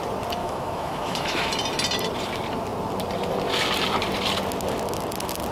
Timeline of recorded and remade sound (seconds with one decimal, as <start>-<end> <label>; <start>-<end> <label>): 0.0-0.4 recorded; 0.4-1.5 remade; 1.5-5.5 recorded